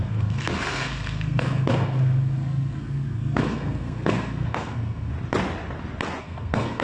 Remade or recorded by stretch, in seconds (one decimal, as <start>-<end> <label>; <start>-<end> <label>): 0.0-5.1 remade; 5.1-6.2 recorded; 6.2-6.8 remade